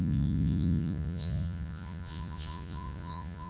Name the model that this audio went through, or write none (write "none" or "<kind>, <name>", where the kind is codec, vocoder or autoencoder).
vocoder, Vocos